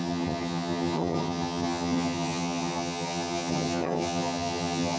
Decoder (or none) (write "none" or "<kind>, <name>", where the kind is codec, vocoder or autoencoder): vocoder, HiFi-GAN